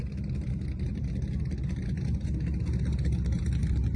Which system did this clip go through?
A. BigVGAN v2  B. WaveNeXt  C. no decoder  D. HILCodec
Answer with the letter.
C